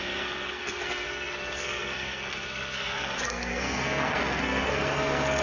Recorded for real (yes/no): no